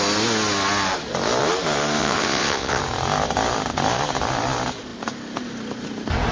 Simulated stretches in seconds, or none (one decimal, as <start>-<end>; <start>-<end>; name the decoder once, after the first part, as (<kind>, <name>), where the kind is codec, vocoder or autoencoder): 2.0-2.8 (vocoder, WaveNeXt)